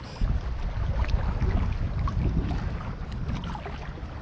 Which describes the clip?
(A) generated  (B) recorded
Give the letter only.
B